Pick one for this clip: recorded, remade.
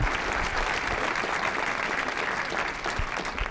recorded